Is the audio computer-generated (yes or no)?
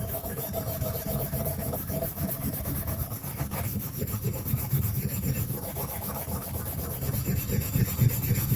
yes